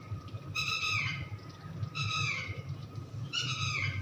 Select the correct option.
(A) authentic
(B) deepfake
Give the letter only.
B